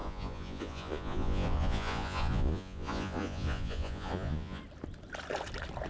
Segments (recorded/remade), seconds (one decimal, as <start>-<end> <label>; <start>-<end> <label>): 0.0-4.6 remade; 4.6-5.9 recorded